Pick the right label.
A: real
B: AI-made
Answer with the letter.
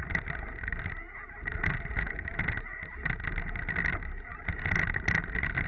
A